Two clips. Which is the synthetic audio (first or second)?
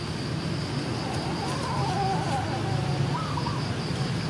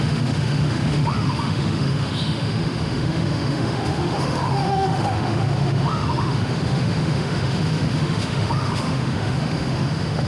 second